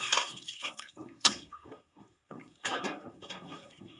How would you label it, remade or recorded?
remade